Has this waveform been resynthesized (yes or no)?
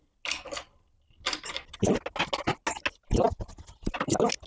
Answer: no